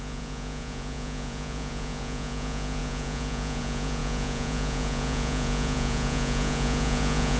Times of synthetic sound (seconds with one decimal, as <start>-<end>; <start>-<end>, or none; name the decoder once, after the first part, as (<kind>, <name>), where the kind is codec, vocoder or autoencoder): 0.0-7.4 (vocoder, Vocos)